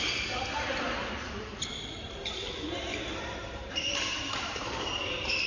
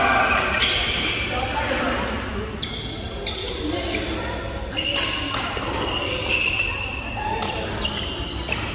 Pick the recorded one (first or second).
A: second